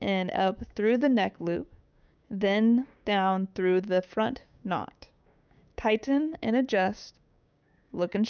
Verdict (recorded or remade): remade